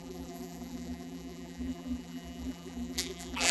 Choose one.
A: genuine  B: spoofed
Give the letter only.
B